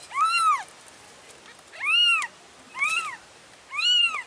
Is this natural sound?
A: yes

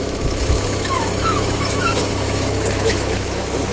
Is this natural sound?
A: no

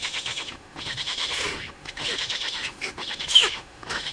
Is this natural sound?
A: no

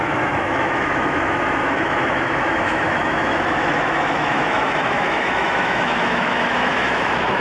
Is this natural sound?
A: no